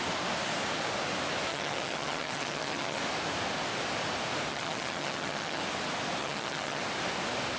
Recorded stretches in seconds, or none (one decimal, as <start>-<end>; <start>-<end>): 0.0-1.5; 3.0-4.5; 5.6-6.2; 6.8-7.6